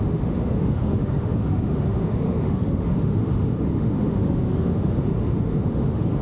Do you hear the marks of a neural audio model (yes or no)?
yes